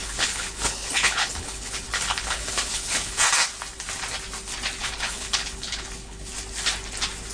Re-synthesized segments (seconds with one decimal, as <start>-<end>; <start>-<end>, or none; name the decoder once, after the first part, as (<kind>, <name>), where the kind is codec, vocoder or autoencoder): 0.0-3.2 (codec, HILCodec); 4.8-6.3

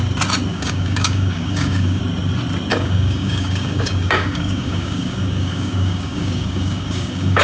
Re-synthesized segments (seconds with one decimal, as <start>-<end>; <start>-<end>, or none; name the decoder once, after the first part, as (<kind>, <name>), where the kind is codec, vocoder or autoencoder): 0.5-2.0 (codec, DAC); 2.7-7.4

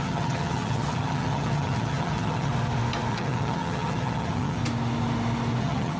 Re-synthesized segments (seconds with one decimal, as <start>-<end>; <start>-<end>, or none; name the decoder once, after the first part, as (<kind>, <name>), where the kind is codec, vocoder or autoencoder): 0.0-2.5 (vocoder, HiFi-GAN); 3.1-4.6; 5.6-6.0

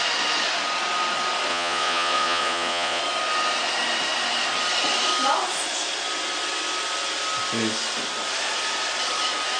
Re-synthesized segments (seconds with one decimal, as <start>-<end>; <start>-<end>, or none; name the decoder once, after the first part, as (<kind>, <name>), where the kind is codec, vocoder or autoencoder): 1.5-3.0 (vocoder, Vocos)

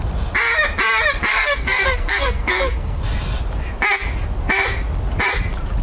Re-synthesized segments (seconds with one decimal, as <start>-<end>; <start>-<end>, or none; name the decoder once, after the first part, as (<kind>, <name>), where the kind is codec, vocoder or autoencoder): 1.3-3.0 (codec, SNAC)

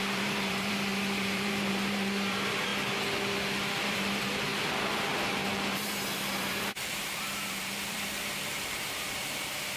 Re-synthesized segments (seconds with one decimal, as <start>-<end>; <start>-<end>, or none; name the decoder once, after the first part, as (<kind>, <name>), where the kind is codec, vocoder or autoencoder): 0.0-2.7 (vocoder, BigVGAN v2); 3.8-9.8

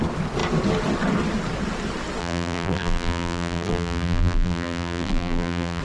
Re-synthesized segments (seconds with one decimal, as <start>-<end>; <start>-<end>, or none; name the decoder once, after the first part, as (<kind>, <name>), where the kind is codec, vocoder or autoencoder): 2.2-5.8 (vocoder, BigVGAN v2)